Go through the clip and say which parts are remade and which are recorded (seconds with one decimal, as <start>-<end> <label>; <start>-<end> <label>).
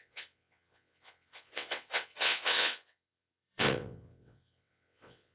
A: 0.0-5.3 remade